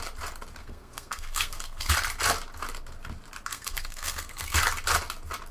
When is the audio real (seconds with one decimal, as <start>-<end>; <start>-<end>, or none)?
0.0-0.6; 1.9-3.5; 4.6-5.5

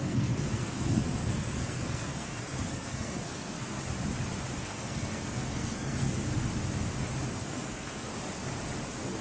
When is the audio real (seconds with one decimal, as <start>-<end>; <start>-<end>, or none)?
3.8-4.6; 6.3-7.3; 8.1-9.2

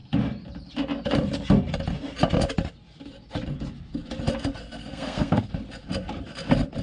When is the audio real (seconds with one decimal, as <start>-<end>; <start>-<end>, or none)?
0.0-4.8; 5.5-6.8

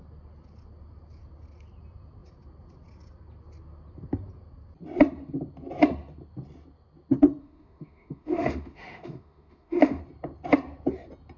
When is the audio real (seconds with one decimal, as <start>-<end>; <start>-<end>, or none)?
0.0-7.4; 10.0-11.4

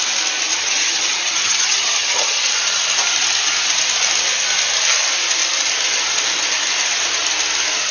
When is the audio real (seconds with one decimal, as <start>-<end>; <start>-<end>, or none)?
0.0-0.5; 2.5-7.9

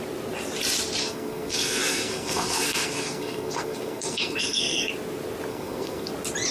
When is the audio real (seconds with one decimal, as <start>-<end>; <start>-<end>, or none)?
0.0-1.0; 4.9-5.5; 6.1-6.5

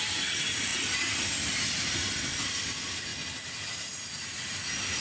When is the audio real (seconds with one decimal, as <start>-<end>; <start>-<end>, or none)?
0.0-5.0

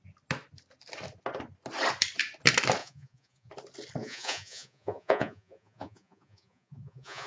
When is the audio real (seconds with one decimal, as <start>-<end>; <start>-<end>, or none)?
0.0-2.8; 3.5-4.0